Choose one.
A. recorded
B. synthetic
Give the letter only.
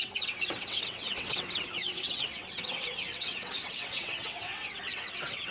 B